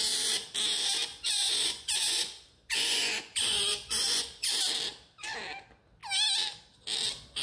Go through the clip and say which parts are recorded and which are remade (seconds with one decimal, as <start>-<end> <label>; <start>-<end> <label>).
0.0-1.1 recorded; 1.1-4.5 remade; 4.5-7.4 recorded